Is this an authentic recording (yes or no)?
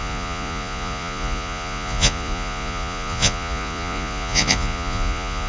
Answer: no